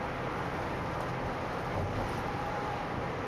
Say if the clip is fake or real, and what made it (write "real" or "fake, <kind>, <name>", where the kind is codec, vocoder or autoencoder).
real